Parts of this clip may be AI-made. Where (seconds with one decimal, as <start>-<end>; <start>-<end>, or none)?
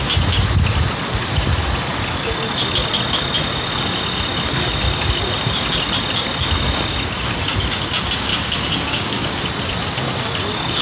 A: 8.3-9.4